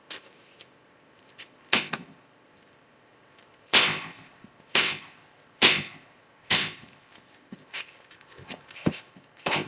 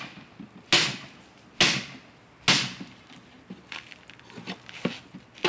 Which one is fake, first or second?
first